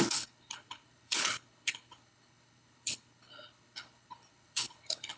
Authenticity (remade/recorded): remade